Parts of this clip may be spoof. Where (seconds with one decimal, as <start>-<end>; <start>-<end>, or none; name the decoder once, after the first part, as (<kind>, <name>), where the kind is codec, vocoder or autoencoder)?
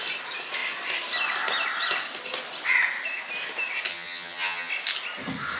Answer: 3.9-4.7 (vocoder, HiFi-GAN)